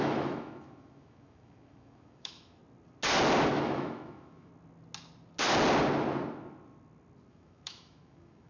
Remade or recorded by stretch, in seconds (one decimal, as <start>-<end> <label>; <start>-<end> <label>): 0.0-2.6 remade; 2.6-3.5 recorded; 3.5-4.5 remade; 4.5-7.3 recorded; 7.3-8.5 remade